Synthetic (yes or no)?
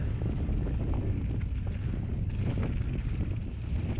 no